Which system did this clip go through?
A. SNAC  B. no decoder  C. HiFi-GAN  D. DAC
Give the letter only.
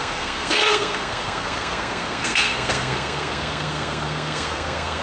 A